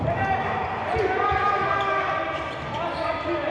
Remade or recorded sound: recorded